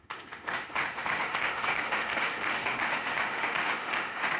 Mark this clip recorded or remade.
remade